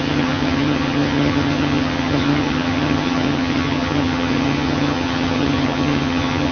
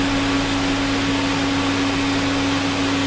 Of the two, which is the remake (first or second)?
first